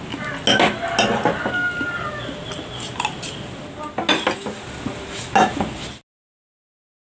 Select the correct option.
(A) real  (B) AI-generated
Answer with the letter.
A